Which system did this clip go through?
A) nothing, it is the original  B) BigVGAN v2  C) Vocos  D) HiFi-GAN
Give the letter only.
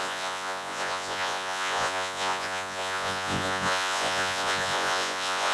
C